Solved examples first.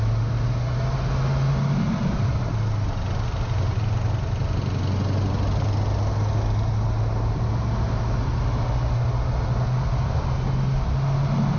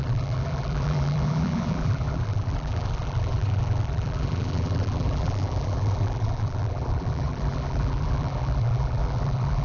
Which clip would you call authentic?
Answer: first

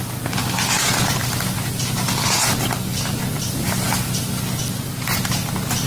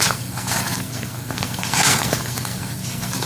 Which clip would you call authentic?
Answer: first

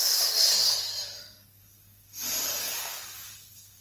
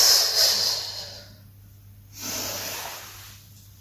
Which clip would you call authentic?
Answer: second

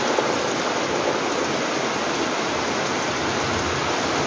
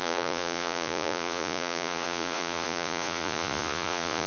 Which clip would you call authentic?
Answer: first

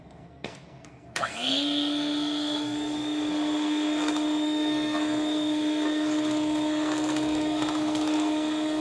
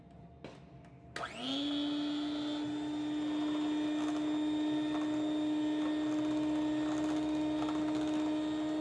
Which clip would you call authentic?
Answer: second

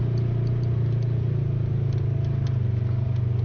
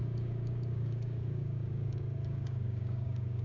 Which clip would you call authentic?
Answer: first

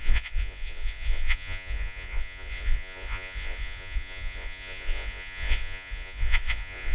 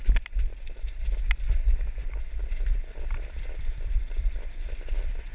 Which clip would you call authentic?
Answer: second